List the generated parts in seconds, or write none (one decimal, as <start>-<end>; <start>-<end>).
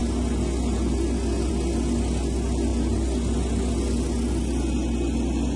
none